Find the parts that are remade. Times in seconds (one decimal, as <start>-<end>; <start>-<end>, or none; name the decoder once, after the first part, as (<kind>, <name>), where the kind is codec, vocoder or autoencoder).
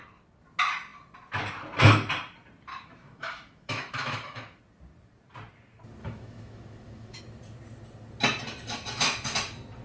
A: 2.7-4.6 (autoencoder, DAC-VAE); 6.0-7.2